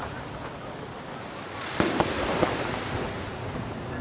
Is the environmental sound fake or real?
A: real